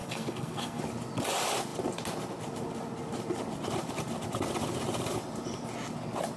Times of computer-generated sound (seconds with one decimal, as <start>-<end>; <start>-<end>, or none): 0.0-0.8